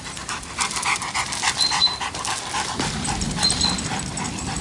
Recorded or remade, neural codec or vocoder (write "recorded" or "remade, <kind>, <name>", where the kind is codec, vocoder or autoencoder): remade, vocoder, BigVGAN v2